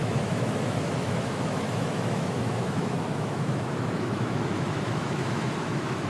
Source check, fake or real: fake